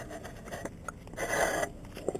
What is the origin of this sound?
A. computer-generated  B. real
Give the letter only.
B